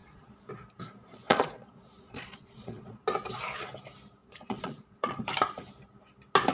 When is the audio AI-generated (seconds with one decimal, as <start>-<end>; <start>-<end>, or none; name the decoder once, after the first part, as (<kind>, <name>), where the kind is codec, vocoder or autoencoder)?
0.0-0.5 (vocoder, Vocos); 1.0-3.0; 4.2-5.2